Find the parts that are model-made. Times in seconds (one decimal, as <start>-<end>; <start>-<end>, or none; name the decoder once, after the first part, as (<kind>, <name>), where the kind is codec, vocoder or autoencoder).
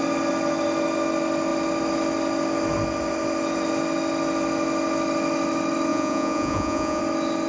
5.9-7.0 (vocoder, Vocos)